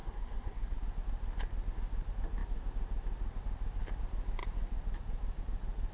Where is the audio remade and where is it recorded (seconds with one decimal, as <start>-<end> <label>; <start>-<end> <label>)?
0.0-0.8 remade; 0.8-5.9 recorded

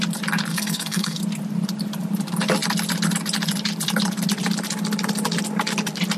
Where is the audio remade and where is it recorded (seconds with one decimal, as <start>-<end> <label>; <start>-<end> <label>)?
0.0-0.5 recorded; 0.5-1.2 remade; 1.2-6.2 recorded

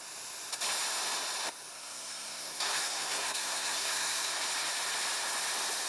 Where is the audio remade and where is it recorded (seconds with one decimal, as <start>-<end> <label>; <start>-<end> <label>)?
0.0-1.7 recorded; 1.7-4.4 remade; 4.4-5.9 recorded

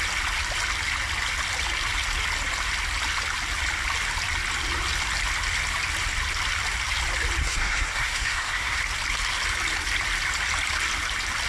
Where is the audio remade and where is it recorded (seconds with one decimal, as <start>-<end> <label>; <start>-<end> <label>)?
0.0-7.4 recorded; 7.4-8.8 remade; 8.8-11.5 recorded

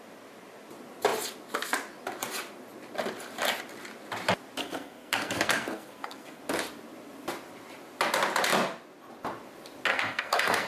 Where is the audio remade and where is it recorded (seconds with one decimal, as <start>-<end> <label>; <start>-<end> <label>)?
0.0-4.6 recorded; 4.6-6.4 remade; 6.4-9.9 recorded; 9.9-10.7 remade

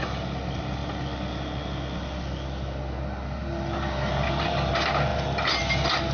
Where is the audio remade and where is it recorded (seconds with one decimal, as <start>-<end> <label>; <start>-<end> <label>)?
0.0-6.1 recorded

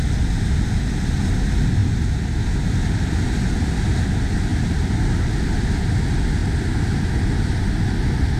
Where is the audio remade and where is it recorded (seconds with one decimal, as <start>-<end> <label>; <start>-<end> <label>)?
0.0-8.4 recorded